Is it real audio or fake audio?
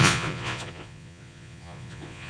fake